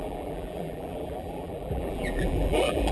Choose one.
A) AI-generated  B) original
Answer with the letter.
A